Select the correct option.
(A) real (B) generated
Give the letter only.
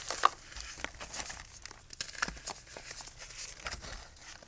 A